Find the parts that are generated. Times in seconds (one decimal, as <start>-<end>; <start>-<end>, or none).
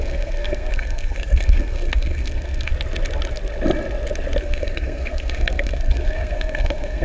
0.0-2.7; 4.4-7.0